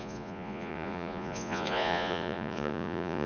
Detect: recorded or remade remade